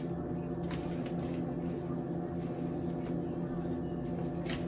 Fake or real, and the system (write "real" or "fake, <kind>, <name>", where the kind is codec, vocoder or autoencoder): real